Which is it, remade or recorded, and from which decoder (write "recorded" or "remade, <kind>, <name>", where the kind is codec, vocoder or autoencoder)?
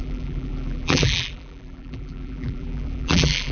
remade, vocoder, BigVGAN v2